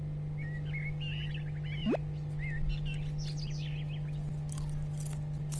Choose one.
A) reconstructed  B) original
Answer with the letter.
B